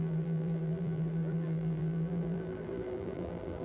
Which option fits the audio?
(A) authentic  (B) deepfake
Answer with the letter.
B